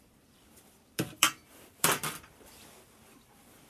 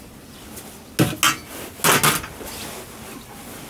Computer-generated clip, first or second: first